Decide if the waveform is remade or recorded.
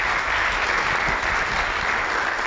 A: recorded